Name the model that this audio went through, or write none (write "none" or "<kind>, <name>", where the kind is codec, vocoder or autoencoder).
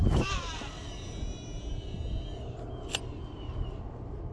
none